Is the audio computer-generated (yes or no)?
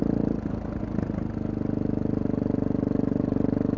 no